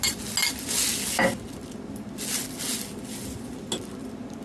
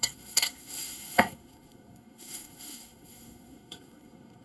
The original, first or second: first